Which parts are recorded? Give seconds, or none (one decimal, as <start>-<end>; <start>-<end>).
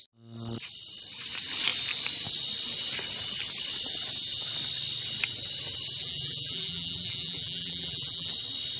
0.0-6.0; 8.3-8.8